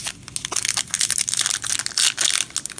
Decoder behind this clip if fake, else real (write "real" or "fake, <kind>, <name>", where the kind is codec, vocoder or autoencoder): real